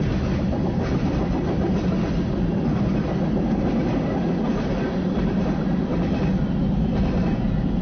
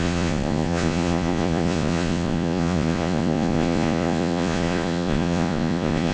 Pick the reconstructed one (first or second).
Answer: second